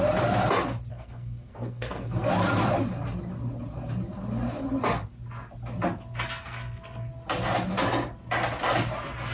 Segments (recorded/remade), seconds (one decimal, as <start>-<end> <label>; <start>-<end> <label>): 0.0-0.9 recorded; 0.9-2.3 remade; 2.3-6.4 recorded; 6.4-7.1 remade; 7.1-9.3 recorded